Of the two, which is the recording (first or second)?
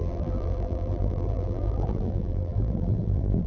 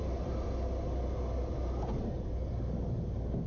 second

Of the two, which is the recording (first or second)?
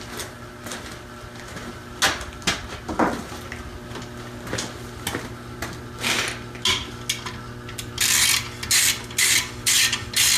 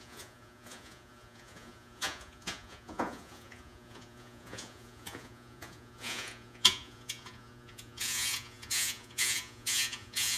first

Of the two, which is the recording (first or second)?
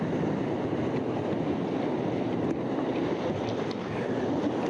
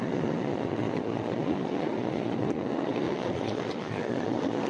first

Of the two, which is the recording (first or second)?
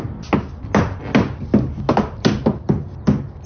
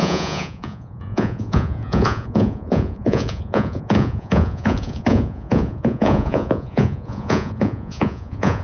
first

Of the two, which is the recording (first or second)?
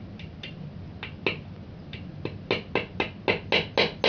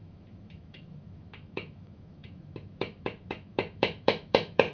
first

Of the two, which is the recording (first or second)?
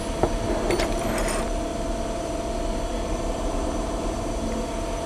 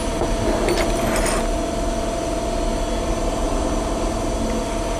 second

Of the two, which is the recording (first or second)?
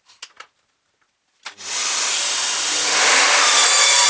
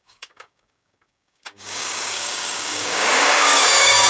first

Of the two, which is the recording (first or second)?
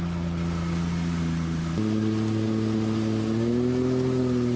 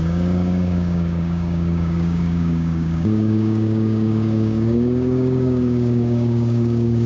first